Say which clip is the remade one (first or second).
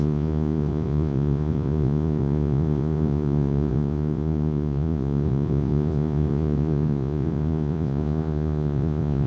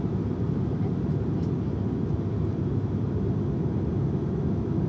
first